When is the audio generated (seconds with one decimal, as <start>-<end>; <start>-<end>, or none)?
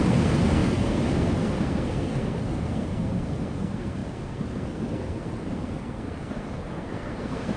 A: 0.0-7.6